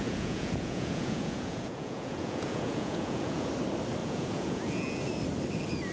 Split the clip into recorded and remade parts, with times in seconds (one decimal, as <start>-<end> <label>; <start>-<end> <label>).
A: 0.0-3.5 remade; 3.5-4.0 recorded; 4.0-4.7 remade; 4.7-5.9 recorded

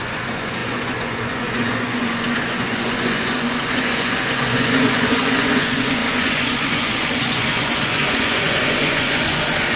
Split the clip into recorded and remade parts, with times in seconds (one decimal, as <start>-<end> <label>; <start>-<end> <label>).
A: 0.0-9.8 remade

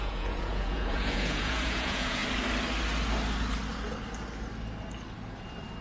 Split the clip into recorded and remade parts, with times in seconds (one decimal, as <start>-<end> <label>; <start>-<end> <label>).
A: 0.0-2.2 remade; 2.2-5.8 recorded

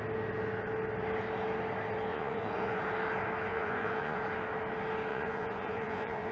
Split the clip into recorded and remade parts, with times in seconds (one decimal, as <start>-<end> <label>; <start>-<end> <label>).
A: 0.0-2.1 recorded; 2.1-2.8 remade; 2.8-3.5 recorded; 3.5-4.2 remade; 4.2-5.1 recorded; 5.1-6.3 remade